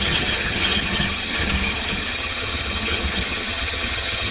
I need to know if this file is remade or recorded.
remade